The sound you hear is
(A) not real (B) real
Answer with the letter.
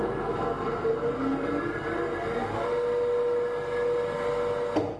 B